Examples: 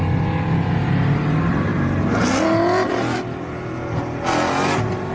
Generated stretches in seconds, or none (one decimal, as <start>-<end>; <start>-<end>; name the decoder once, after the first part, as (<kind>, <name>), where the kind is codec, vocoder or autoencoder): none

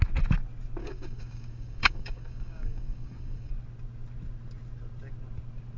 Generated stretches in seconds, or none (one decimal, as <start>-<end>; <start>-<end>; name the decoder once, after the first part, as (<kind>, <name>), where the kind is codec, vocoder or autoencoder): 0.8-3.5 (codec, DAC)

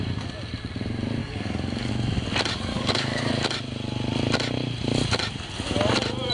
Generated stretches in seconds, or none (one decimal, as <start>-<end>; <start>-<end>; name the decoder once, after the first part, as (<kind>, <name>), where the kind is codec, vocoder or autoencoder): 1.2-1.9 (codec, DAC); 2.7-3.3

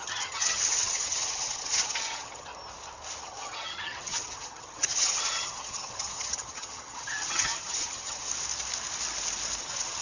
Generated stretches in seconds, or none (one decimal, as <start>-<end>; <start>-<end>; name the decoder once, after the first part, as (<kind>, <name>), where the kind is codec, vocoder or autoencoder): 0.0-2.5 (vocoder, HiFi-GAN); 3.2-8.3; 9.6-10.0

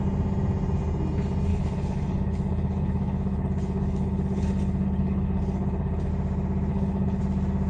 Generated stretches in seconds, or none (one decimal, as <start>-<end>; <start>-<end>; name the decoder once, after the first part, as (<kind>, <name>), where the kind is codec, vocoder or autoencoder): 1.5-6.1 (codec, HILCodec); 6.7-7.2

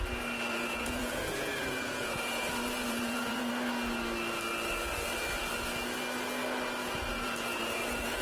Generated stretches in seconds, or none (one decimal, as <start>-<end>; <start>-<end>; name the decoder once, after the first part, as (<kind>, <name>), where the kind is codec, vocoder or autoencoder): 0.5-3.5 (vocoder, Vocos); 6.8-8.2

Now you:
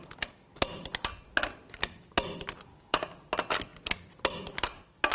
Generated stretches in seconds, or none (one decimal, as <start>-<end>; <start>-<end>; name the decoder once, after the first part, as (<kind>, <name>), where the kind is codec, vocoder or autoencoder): 2.7-3.3 (codec, DAC)